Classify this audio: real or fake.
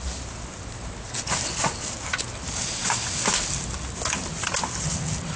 real